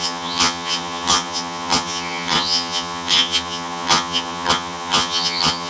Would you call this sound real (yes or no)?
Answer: no